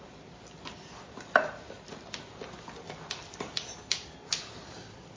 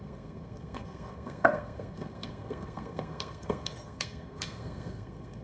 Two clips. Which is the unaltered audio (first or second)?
first